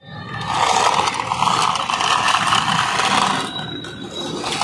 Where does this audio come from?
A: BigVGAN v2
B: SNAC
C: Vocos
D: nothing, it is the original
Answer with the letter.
D